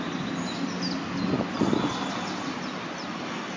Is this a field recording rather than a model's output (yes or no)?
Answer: yes